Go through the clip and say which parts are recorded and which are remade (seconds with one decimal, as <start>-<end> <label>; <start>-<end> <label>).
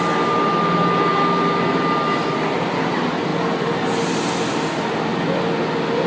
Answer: 0.0-6.1 recorded